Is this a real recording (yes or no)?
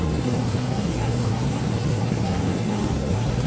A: no